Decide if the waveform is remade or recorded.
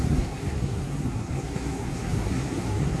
remade